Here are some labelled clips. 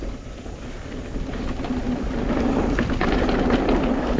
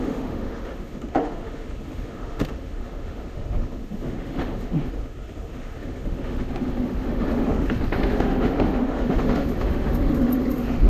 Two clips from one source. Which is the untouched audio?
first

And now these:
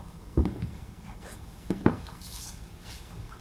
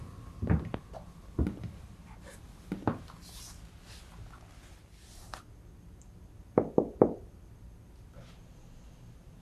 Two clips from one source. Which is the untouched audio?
second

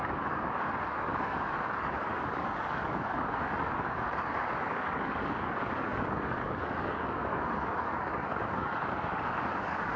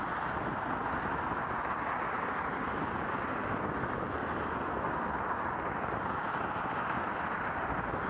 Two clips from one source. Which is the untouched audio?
second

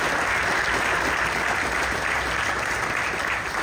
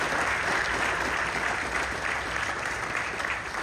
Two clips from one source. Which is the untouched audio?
first